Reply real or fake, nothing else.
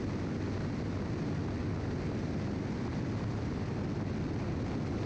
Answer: real